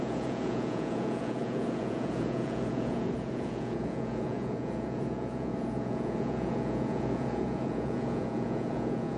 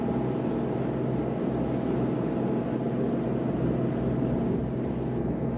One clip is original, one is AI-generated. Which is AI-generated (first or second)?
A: first